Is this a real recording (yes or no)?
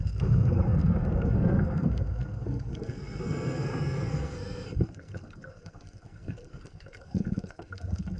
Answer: no